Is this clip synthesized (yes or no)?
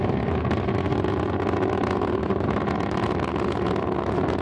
no